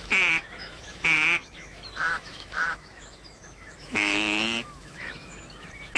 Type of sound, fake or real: fake